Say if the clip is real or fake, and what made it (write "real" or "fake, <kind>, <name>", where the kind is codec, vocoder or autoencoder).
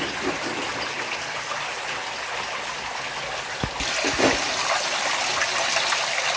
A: real